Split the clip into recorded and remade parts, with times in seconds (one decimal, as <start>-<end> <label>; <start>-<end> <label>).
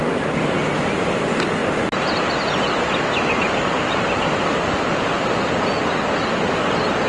0.0-7.1 recorded